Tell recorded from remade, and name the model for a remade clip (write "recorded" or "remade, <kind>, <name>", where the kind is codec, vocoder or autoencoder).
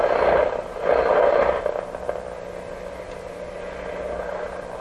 recorded